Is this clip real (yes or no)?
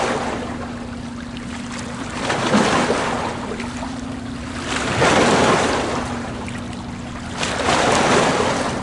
yes